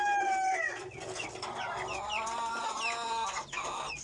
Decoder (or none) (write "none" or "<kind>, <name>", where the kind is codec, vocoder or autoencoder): none